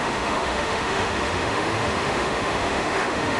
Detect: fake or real fake